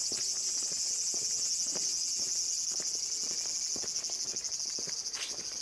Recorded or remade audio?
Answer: recorded